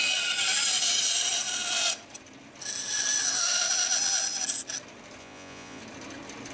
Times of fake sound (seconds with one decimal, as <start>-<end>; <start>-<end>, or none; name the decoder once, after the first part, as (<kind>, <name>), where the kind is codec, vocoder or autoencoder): 5.2-5.8 (vocoder, Vocos)

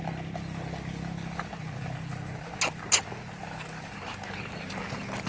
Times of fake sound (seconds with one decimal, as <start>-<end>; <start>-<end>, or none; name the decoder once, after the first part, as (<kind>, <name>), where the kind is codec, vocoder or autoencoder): none

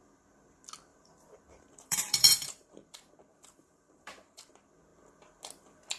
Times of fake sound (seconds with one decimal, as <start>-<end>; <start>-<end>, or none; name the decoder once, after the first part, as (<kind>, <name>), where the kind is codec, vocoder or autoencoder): 0.9-4.5 (vocoder, BigVGAN v2)

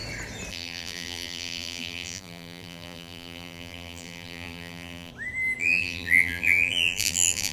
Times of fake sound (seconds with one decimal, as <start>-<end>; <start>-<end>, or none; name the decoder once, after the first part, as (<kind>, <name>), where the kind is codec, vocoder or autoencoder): 0.5-5.1 (vocoder, BigVGAN v2); 5.6-7.5